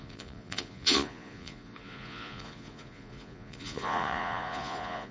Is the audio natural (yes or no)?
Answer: no